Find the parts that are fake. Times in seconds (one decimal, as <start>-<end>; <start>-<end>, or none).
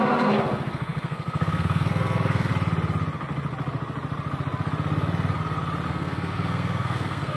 0.0-2.5; 5.9-7.4